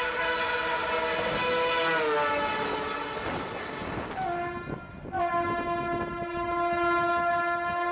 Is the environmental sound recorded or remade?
recorded